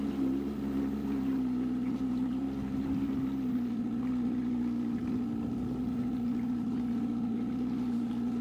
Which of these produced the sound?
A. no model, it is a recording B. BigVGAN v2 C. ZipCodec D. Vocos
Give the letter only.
A